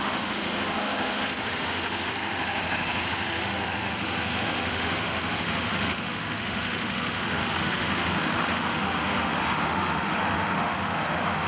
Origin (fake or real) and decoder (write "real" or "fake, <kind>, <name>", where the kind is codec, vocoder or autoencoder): fake, autoencoder, DAC-VAE